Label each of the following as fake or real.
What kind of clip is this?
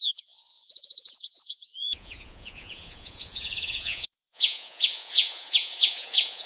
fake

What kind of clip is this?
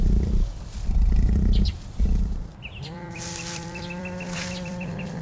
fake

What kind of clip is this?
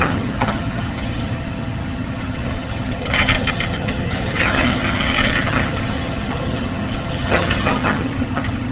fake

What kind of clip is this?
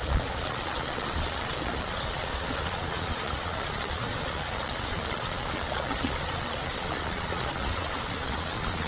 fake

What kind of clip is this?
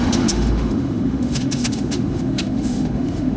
fake